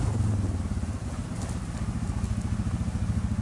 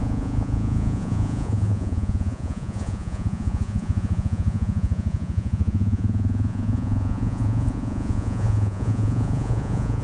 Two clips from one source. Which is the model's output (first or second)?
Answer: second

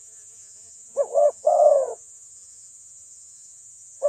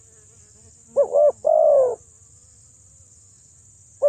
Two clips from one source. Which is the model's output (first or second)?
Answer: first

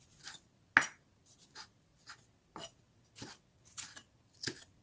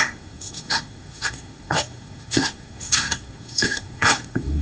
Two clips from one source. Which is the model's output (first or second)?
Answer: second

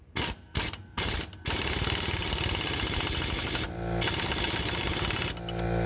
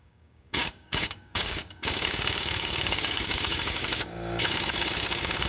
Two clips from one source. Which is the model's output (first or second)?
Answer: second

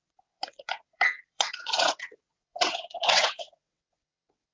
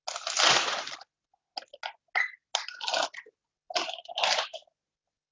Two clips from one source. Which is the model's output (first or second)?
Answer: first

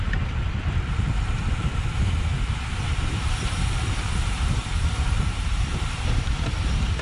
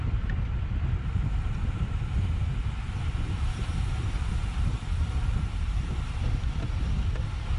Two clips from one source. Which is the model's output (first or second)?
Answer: first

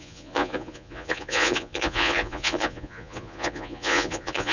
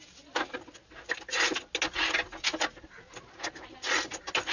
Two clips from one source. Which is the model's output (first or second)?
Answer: first